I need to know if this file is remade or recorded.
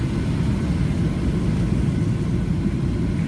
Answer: recorded